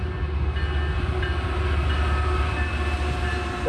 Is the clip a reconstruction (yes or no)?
no